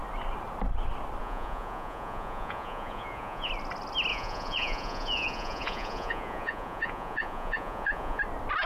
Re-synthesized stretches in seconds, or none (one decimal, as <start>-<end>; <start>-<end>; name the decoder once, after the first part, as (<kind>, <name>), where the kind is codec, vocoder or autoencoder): 1.2-3.5 (vocoder, Vocos); 4.1-8.2

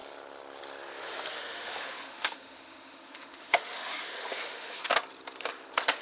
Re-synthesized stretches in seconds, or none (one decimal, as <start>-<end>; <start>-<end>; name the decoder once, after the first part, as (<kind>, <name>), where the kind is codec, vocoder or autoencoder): 1.3-4.8 (autoencoder, DAC-VAE)

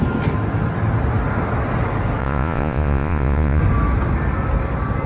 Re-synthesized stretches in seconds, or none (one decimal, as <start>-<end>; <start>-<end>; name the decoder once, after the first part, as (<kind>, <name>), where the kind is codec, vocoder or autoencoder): 2.2-3.6 (vocoder, Vocos)

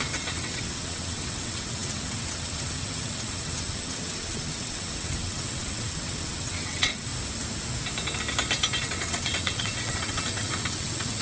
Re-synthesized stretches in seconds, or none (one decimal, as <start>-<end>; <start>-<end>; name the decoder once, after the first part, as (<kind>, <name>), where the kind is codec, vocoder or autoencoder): 0.0-7.1 (vocoder, WaveNeXt); 8.8-11.2

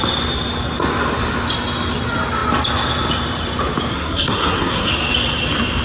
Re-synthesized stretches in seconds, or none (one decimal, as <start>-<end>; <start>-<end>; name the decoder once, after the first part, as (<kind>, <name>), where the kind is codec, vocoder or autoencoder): 3.9-4.9 (codec, SNAC)

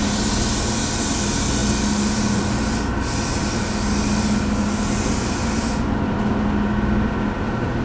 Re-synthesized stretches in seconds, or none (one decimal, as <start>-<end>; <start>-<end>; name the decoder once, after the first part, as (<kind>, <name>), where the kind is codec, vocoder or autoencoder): none

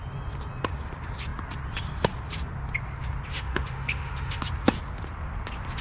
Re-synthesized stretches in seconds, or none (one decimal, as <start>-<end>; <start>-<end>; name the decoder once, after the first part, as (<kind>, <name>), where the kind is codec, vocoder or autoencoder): 3.3-4.4 (autoencoder, DAC-VAE)